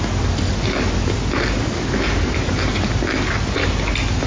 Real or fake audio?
real